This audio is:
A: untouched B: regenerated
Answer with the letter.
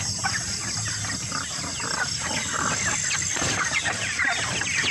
A